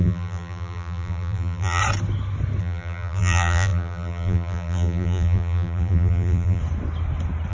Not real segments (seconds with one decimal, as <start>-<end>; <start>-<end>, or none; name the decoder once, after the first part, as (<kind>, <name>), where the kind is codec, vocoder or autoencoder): 0.0-1.8 (vocoder, BigVGAN v2); 2.6-6.6